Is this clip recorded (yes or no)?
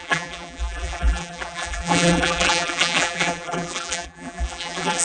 no